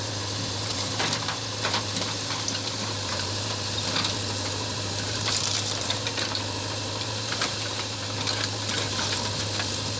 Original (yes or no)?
no